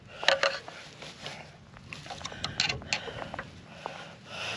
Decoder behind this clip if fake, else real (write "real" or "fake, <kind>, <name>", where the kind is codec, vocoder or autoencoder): real